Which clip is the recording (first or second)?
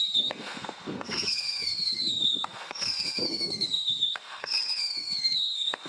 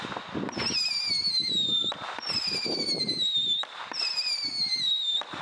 second